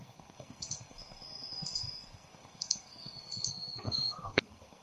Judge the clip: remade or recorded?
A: remade